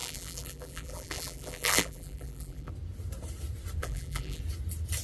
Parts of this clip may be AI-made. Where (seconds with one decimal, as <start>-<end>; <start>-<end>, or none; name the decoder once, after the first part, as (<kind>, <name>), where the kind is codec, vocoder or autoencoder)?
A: 0.0-2.7 (vocoder, BigVGAN v2); 3.8-4.4